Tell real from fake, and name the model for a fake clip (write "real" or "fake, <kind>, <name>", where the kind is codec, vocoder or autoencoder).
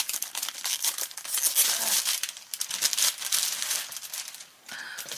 real